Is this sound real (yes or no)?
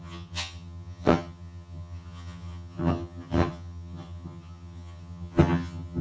no